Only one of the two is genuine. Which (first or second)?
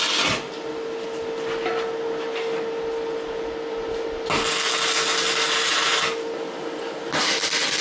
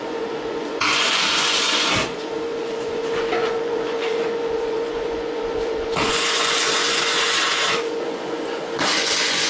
first